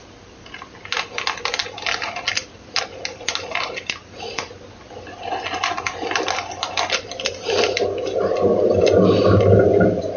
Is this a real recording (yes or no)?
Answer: yes